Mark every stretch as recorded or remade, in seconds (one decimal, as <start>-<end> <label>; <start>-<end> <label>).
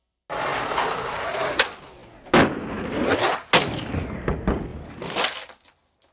0.0-0.5 recorded; 0.5-1.4 remade; 1.4-6.1 recorded